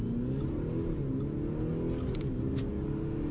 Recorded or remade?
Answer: recorded